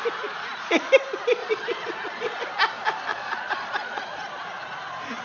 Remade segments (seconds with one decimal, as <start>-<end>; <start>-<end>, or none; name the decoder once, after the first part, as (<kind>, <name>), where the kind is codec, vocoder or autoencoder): 1.4-2.4 (vocoder, Vocos); 3.1-4.0

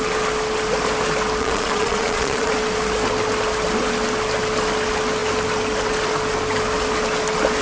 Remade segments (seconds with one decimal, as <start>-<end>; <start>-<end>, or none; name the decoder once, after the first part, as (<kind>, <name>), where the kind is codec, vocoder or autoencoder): 1.4-2.5 (vocoder, Vocos)

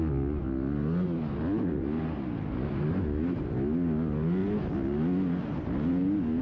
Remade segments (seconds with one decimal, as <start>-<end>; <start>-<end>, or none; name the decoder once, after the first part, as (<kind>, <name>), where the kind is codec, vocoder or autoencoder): none

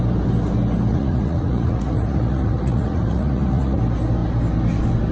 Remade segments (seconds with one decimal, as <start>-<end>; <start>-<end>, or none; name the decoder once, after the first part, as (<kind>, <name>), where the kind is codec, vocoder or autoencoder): 0.9-3.8 (vocoder, Vocos)